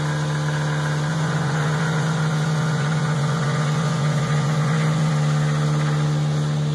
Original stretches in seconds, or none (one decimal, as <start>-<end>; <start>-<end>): 0.0-1.1; 5.1-6.7